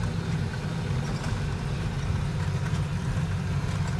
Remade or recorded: recorded